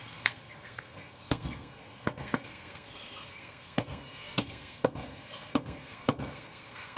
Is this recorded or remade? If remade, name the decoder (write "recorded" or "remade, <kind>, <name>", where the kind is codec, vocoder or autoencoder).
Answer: remade, codec, SNAC